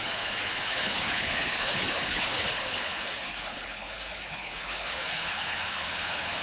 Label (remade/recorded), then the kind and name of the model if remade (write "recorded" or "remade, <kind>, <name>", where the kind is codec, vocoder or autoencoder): remade, codec, HILCodec